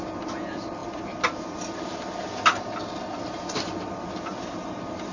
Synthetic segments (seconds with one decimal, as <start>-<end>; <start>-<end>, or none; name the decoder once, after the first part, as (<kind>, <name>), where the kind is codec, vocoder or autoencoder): none